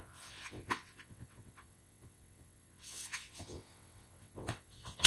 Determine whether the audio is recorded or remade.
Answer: remade